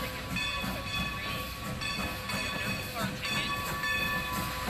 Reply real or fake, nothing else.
real